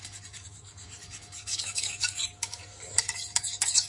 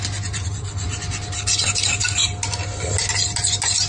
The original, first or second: second